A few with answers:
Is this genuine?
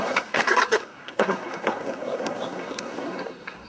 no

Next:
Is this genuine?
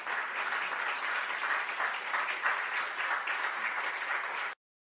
yes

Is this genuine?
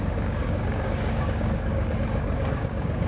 no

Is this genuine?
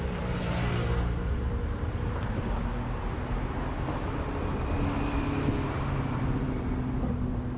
yes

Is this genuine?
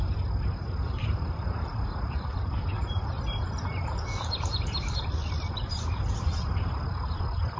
no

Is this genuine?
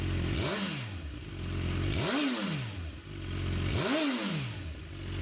yes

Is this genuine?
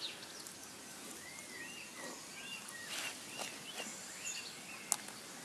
yes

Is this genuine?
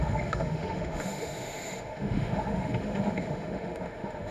no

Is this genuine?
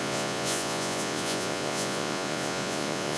no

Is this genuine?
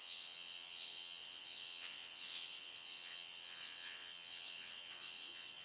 no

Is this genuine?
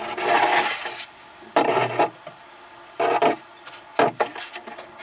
yes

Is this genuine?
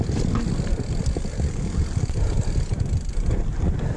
no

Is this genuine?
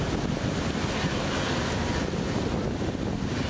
yes